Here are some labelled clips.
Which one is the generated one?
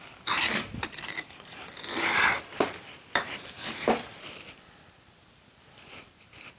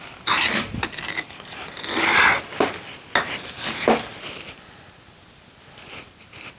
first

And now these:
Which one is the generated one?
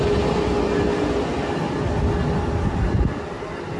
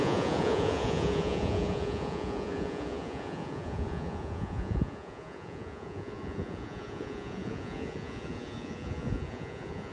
second